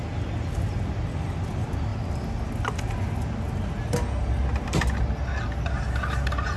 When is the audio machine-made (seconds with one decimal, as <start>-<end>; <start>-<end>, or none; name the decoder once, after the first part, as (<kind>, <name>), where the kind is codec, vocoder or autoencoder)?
none